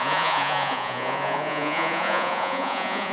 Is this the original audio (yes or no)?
no